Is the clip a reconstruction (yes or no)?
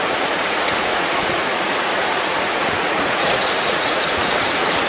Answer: yes